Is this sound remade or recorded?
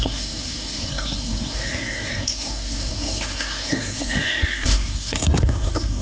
remade